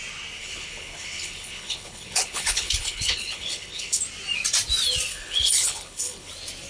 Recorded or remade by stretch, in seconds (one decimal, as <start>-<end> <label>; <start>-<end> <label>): 0.0-0.4 recorded; 0.4-4.0 remade; 4.0-5.1 recorded; 5.1-6.3 remade; 6.3-6.7 recorded